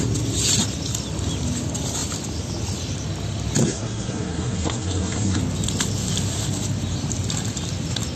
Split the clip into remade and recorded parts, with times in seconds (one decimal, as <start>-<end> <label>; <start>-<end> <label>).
0.0-3.6 recorded; 3.6-5.4 remade; 5.4-8.2 recorded